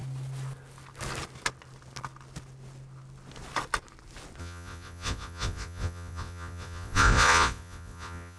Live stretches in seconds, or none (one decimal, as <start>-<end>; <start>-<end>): 0.0-4.4